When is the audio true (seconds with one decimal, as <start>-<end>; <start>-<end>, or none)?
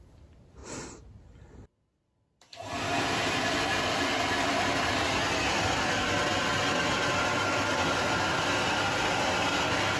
0.0-10.0